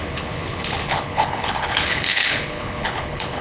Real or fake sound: fake